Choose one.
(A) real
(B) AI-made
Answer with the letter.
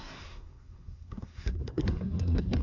B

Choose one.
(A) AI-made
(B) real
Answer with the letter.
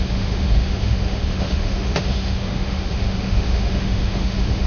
A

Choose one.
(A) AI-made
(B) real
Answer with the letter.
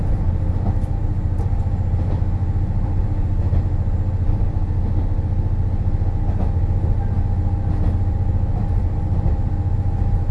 B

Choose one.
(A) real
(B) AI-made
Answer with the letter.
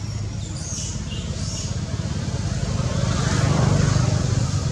A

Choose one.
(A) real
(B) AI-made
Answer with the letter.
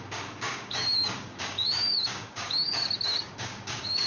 B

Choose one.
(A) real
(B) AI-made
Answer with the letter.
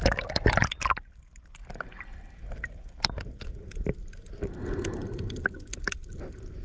A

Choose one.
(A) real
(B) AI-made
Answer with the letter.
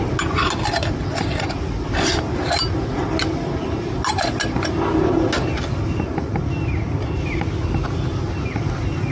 A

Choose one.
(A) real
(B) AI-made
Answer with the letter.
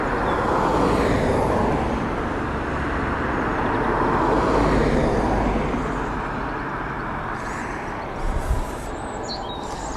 A